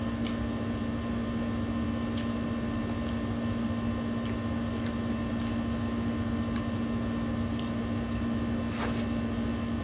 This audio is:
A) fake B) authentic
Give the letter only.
B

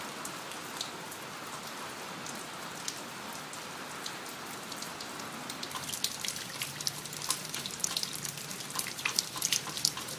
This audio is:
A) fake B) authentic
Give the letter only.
B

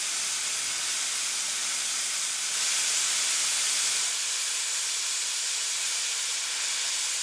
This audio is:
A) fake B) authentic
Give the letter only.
B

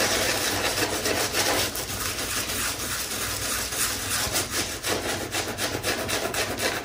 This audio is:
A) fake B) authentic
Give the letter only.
B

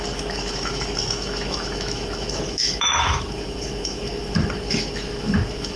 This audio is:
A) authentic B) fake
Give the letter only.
B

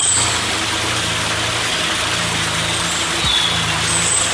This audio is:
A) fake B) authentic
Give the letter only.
B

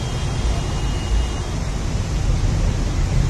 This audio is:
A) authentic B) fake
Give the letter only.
A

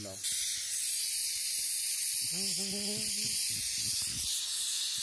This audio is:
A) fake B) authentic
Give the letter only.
B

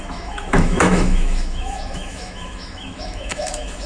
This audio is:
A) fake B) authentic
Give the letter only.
A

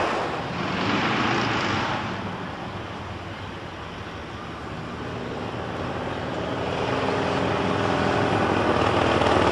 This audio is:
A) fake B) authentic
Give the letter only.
B